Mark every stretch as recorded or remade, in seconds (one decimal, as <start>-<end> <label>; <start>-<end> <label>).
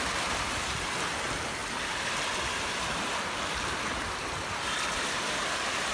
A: 0.0-5.9 recorded